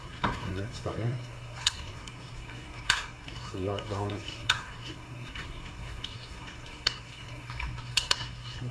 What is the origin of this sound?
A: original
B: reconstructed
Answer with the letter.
B